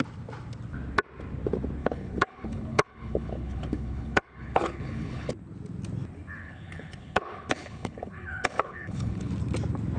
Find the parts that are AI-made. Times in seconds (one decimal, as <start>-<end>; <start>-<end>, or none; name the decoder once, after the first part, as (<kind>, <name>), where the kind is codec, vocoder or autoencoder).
1.8-5.3 (codec, HILCodec); 6.4-9.3